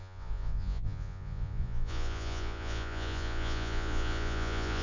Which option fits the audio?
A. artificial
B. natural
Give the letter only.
A